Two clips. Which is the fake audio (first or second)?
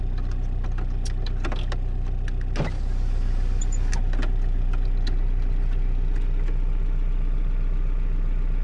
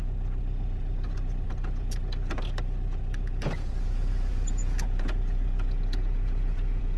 second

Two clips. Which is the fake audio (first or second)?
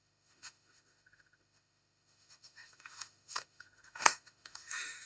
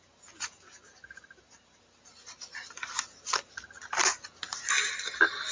first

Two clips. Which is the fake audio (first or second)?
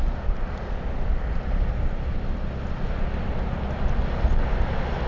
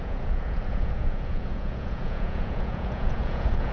second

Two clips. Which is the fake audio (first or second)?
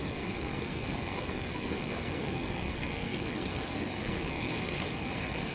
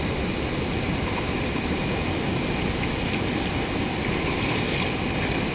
first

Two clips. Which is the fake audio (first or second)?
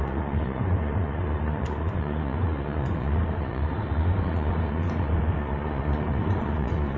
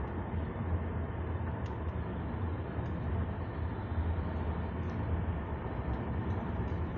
first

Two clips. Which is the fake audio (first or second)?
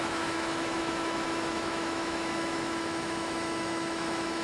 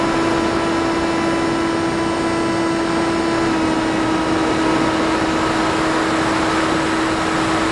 first